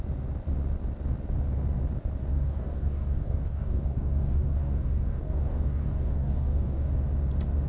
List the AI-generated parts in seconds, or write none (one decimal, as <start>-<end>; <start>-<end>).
2.3-6.9

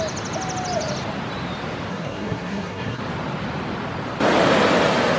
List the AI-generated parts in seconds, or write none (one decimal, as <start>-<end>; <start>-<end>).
1.9-3.0

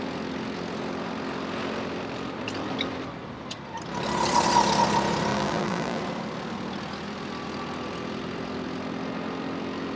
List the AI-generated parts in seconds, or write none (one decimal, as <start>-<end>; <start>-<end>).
5.3-6.0

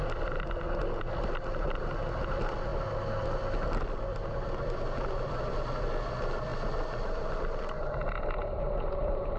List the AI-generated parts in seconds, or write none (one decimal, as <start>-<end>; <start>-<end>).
none

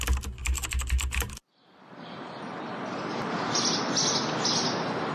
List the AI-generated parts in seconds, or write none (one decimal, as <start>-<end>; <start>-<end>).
0.4-3.5